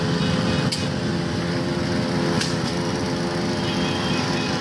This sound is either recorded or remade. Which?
recorded